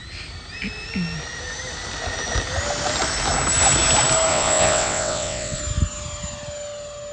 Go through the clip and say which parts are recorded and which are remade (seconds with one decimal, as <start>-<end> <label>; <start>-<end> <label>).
0.0-4.3 recorded; 4.3-5.6 remade; 5.6-7.1 recorded

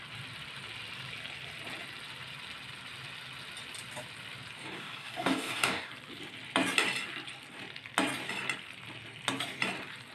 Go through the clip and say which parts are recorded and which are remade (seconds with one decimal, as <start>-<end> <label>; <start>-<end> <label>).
0.0-4.6 recorded; 4.6-5.9 remade; 5.9-10.1 recorded

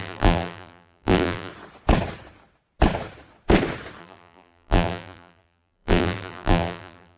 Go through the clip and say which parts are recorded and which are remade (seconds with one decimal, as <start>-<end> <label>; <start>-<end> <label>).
0.0-1.5 remade; 1.5-4.0 recorded; 4.0-7.2 remade